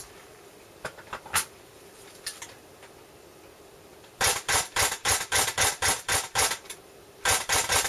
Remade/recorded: recorded